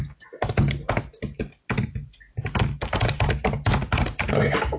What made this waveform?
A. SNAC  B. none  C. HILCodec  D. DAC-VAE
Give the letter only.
B